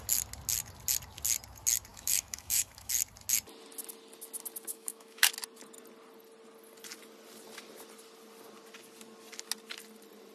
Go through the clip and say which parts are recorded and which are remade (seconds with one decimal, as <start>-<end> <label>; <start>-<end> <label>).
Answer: 0.0-1.9 recorded; 1.9-2.9 remade; 2.9-4.7 recorded; 4.7-5.3 remade; 5.3-10.3 recorded